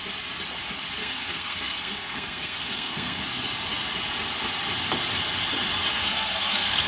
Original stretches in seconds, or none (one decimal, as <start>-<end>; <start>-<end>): 0.0-1.0; 3.2-5.9